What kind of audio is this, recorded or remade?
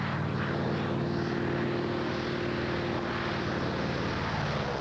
recorded